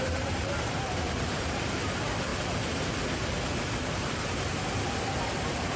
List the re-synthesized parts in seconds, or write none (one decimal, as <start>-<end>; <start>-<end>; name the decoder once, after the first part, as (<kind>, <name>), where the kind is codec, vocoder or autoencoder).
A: 0.0-2.3 (vocoder, BigVGAN v2); 3.6-4.5; 5.3-5.8